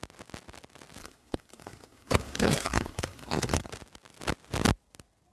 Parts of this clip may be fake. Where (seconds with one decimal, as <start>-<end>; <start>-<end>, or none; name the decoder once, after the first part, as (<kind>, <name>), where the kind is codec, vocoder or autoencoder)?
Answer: 1.0-3.7 (codec, SNAC)

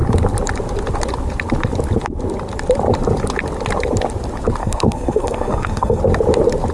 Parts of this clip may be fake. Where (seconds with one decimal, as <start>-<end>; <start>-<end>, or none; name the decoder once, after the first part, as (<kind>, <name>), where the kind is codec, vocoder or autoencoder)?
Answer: 4.6-6.0 (codec, SNAC)

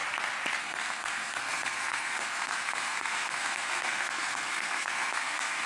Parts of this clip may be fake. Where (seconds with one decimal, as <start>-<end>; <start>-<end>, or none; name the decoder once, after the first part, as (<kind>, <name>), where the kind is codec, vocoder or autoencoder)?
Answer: 0.6-5.7 (codec, SNAC)

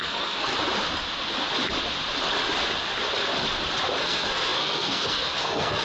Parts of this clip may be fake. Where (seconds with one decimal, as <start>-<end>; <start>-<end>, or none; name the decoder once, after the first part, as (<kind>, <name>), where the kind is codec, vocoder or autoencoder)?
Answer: 0.0-0.5 (codec, SNAC); 4.0-5.8

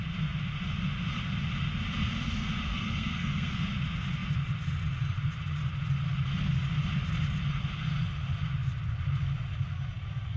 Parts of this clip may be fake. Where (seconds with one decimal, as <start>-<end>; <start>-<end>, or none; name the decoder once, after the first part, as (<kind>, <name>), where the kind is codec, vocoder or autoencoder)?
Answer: 2.7-3.6 (codec, SNAC)

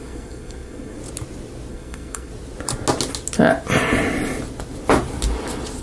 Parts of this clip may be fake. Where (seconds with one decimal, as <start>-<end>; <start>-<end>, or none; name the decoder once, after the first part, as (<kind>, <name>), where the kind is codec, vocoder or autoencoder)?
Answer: 0.0-1.0 (codec, SNAC); 1.7-2.3

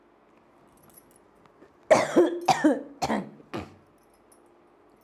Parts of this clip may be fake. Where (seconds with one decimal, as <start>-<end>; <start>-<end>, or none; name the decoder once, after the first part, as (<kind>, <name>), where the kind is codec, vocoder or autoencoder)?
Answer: none